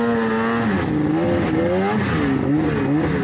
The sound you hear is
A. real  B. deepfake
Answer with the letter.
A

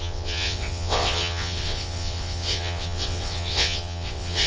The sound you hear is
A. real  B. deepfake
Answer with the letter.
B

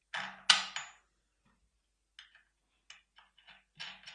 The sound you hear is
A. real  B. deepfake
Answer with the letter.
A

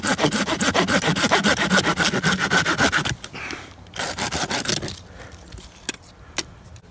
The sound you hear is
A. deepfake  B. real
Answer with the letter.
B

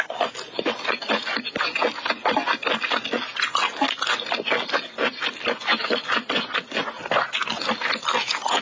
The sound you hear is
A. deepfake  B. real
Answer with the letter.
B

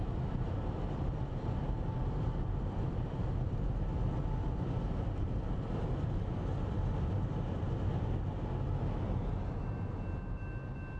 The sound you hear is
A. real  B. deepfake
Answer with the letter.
A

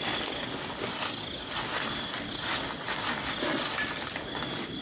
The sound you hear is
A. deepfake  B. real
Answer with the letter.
B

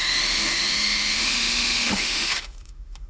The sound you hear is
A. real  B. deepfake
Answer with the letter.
B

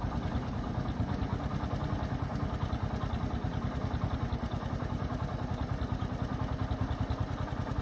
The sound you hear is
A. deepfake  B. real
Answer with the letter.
B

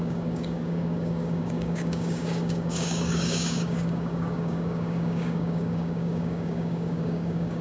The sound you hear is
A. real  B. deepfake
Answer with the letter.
B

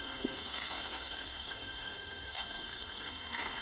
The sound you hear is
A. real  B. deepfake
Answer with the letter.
B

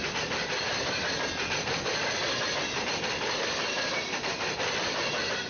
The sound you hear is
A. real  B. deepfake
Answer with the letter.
A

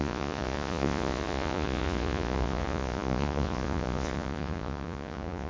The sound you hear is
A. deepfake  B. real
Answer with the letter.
A